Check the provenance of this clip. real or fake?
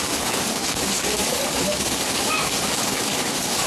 fake